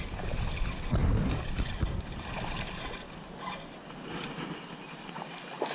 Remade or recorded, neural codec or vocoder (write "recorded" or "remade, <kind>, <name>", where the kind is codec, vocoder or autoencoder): recorded